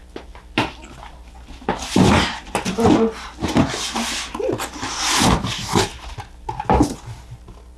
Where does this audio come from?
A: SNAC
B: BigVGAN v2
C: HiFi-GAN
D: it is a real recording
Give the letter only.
D